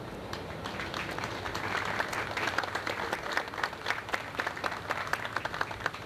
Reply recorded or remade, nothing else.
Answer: recorded